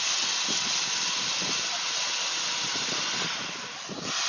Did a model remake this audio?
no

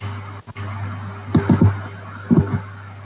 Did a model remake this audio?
no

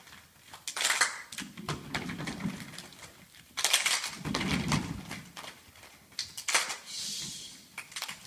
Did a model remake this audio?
no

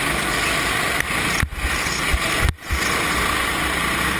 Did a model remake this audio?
no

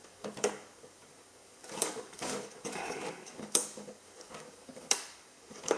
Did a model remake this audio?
yes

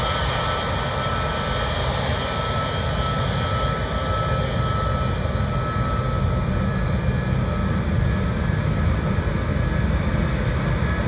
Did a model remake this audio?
no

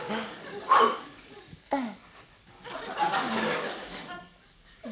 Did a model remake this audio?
yes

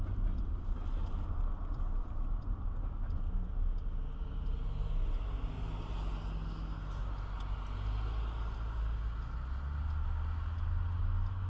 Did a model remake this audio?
no